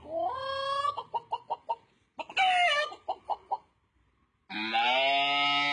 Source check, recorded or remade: recorded